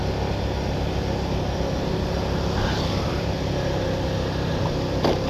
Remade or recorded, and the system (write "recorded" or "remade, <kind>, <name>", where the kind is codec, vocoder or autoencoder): recorded